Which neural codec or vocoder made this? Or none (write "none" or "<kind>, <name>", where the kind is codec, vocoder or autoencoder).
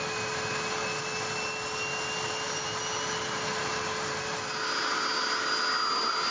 none